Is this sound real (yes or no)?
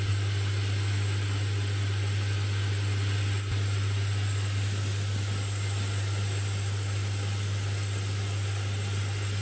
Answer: yes